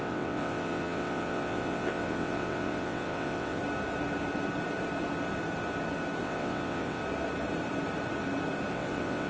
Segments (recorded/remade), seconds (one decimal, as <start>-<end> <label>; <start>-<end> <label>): 0.0-3.6 remade; 3.6-6.2 recorded; 6.2-7.0 remade; 7.0-8.7 recorded; 8.7-9.3 remade